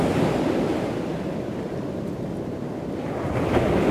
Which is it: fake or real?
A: real